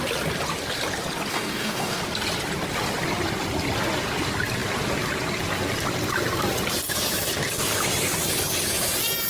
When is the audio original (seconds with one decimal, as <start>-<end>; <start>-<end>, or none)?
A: 0.0-1.3; 2.0-9.3

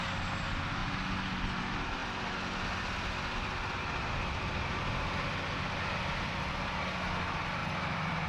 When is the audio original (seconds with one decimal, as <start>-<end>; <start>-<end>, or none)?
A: 0.0-8.3

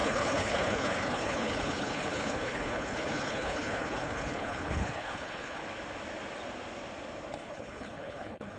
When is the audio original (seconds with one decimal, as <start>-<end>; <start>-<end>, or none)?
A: 5.6-7.3

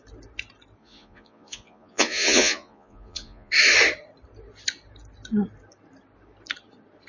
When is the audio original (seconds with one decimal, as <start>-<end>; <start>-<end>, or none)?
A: 0.0-0.8; 3.5-7.1

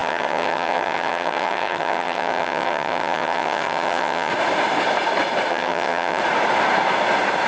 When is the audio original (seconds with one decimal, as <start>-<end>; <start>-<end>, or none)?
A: 4.3-5.5; 6.2-7.5

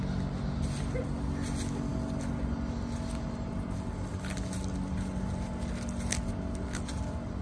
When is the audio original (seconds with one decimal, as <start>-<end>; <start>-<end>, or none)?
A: 0.0-7.4